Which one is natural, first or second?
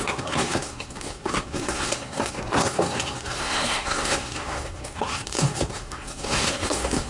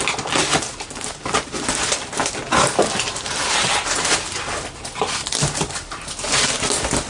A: second